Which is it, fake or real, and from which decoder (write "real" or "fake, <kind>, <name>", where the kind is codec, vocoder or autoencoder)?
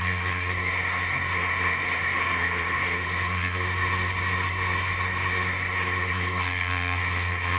fake, codec, SNAC